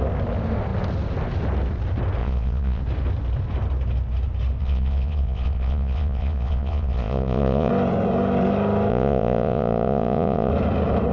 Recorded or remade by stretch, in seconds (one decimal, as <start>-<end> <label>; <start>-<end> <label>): 0.0-2.2 recorded; 2.2-2.8 remade; 2.8-4.6 recorded; 4.6-7.7 remade; 7.7-8.9 recorded; 8.9-10.5 remade; 10.5-11.1 recorded